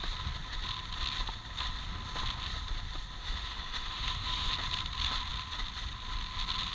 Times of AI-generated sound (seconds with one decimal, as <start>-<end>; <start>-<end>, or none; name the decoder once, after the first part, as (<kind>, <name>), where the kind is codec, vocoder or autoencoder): 3.2-4.5 (autoencoder, DAC-VAE)